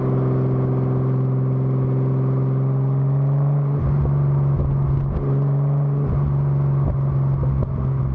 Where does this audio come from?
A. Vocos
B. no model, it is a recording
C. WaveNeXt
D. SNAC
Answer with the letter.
B